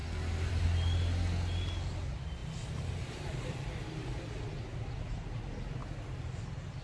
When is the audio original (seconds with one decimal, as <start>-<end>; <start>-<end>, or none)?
0.0-2.4; 4.5-6.8